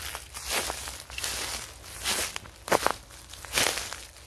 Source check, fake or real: real